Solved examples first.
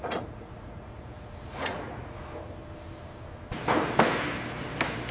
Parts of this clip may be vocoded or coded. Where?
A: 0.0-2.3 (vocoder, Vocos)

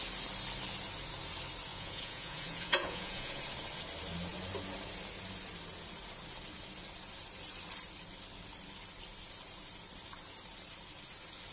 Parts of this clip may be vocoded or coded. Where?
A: 1.7-3.4 (vocoder, Vocos)

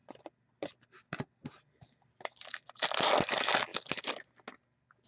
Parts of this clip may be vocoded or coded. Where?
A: none

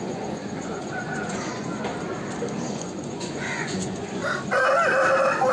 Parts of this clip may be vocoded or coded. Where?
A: 0.0-1.9 (vocoder, Vocos); 2.7-4.2